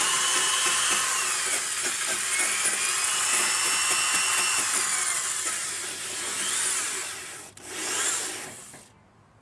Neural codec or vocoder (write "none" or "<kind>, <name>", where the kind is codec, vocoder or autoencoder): vocoder, BigVGAN v2